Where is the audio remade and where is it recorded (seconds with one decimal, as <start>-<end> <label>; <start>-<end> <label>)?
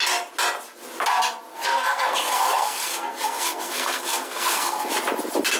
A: 0.0-1.5 recorded; 1.5-4.9 remade; 4.9-5.6 recorded